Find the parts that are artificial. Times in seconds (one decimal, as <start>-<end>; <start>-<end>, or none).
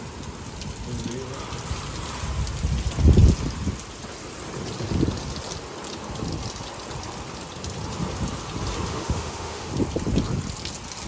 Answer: 8.9-9.7